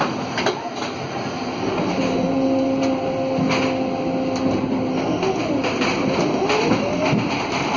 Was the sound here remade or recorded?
recorded